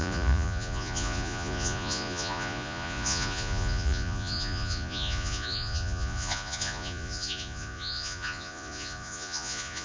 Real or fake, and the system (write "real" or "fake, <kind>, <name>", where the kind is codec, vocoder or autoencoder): fake, vocoder, Vocos